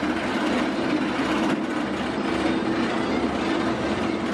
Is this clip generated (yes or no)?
no